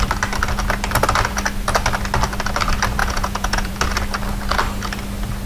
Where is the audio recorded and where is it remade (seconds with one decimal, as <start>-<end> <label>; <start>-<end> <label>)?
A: 0.0-3.0 recorded; 3.0-3.7 remade; 3.7-5.5 recorded